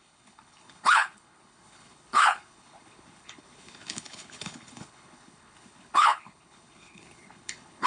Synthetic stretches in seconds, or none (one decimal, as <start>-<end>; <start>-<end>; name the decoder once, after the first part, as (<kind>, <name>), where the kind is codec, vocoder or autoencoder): 0.0-7.9 (codec, HILCodec)